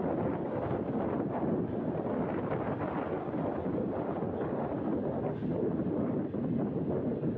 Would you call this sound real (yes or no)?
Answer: yes